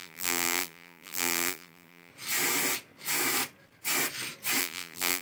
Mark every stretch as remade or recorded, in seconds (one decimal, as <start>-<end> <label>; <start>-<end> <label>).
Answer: 0.0-2.1 remade; 2.1-4.6 recorded; 4.6-5.2 remade